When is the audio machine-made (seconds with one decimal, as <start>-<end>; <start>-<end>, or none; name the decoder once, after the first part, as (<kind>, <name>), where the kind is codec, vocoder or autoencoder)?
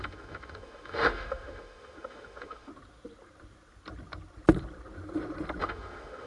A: 0.0-2.7 (autoencoder, DAC-VAE); 5.6-6.3